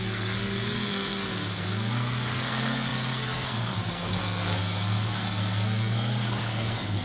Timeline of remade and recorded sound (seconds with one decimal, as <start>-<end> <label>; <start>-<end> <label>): 0.0-7.0 remade